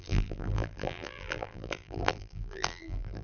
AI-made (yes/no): yes